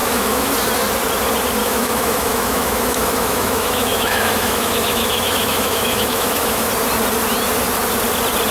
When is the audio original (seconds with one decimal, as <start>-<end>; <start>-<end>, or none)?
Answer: 0.5-1.6; 6.7-8.5